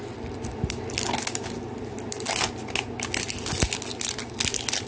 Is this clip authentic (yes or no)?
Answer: yes